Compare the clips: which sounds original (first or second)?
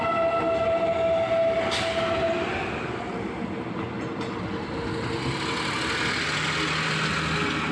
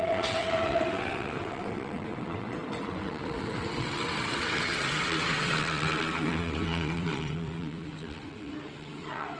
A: first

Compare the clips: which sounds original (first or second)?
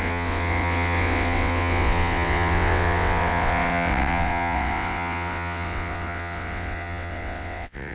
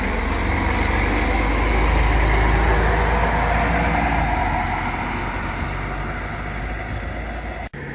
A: second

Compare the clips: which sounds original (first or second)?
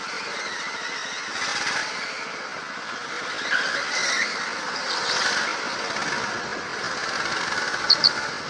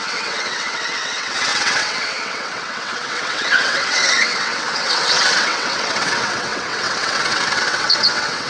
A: first